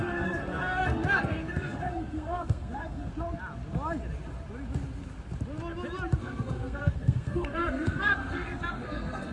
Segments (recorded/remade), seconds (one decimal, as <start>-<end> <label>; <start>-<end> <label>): 0.0-3.1 remade; 3.1-6.2 recorded; 6.2-9.3 remade